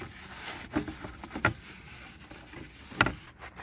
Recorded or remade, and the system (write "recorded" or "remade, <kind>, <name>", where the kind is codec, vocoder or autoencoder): recorded